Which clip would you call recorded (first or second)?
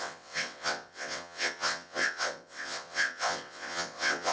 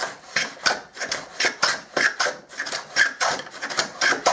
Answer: second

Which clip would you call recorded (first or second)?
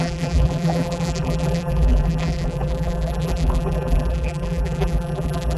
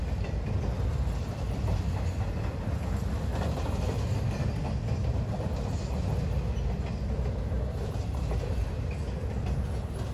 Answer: second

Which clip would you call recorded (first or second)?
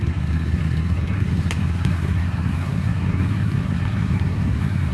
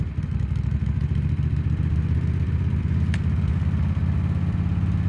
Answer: second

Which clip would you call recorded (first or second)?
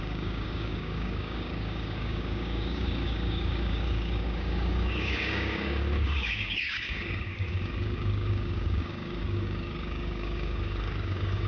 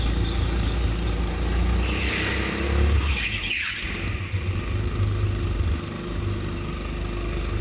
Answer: second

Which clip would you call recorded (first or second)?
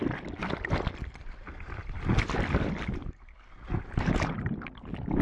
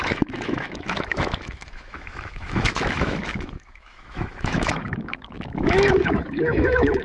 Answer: first